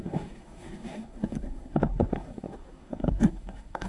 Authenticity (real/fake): fake